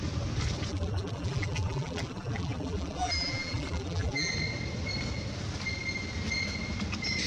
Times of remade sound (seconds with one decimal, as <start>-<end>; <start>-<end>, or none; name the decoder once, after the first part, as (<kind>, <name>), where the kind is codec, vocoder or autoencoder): 0.7-4.3 (vocoder, BigVGAN v2)